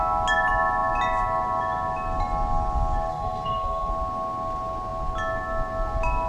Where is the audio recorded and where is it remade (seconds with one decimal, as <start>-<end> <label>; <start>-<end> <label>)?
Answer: 0.0-3.1 recorded; 3.1-3.9 remade; 3.9-6.3 recorded